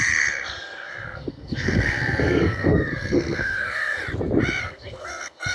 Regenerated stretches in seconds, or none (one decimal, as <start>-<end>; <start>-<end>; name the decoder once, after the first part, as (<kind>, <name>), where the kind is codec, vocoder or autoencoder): 0.0-4.0 (codec, SNAC); 4.6-5.5